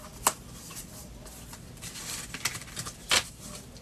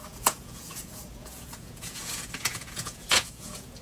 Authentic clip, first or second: first